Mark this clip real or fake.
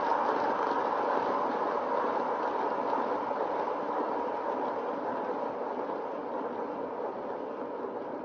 real